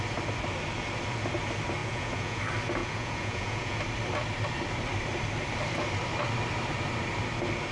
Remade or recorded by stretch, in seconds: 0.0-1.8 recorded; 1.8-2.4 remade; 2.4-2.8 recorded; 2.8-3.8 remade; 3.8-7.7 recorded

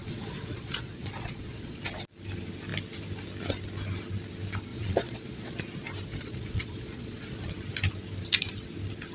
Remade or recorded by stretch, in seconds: 0.0-1.8 remade; 1.8-4.7 recorded; 4.7-5.6 remade; 5.6-6.1 recorded; 6.1-7.5 remade; 7.5-9.1 recorded

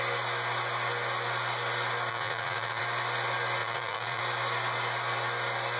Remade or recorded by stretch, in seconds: 0.0-2.1 recorded; 2.1-2.8 remade; 2.8-3.6 recorded; 3.6-4.2 remade; 4.2-5.8 recorded

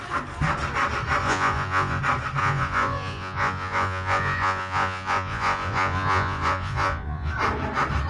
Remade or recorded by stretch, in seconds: 0.0-1.2 recorded; 1.2-2.0 remade; 2.0-2.4 recorded; 2.4-7.3 remade; 7.3-8.1 recorded

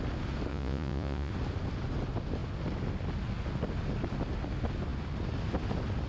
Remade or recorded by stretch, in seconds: 0.0-0.5 recorded; 0.5-1.3 remade; 1.3-6.1 recorded